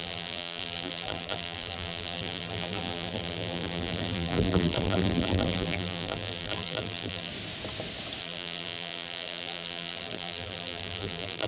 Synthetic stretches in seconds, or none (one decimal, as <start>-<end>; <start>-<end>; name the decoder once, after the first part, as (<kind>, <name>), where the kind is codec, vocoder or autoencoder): 0.0-7.3 (vocoder, BigVGAN v2); 8.2-11.5